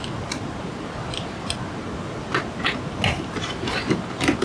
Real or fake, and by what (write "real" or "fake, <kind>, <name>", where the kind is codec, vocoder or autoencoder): real